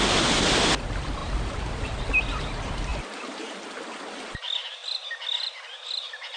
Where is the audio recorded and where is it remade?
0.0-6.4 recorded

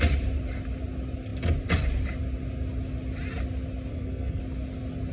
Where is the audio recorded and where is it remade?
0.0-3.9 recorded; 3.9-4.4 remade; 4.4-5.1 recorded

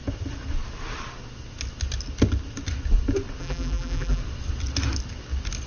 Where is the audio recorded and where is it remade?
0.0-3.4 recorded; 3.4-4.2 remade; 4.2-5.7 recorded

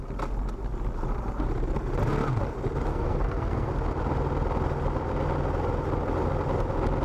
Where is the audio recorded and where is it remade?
0.0-2.9 recorded; 2.9-3.7 remade; 3.7-7.0 recorded

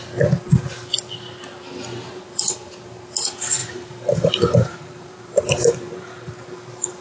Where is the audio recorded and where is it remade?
0.0-1.9 recorded; 1.9-3.0 remade; 3.0-3.6 recorded; 3.6-6.3 remade; 6.3-7.0 recorded

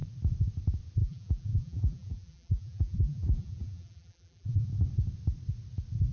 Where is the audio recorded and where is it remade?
0.0-1.0 recorded; 1.0-4.7 remade; 4.7-6.1 recorded

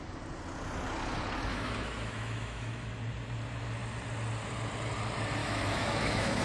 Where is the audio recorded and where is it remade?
0.0-1.5 recorded; 1.5-2.9 remade; 2.9-5.4 recorded; 5.4-6.4 remade

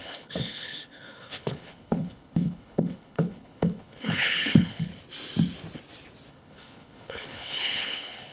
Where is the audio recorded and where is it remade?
0.0-4.9 remade; 4.9-6.3 recorded; 6.3-8.3 remade